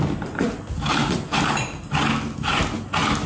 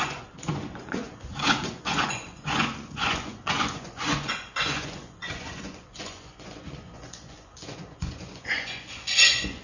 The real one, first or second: first